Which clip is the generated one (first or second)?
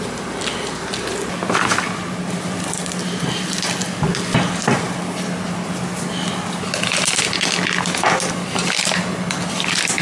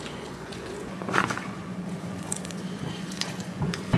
second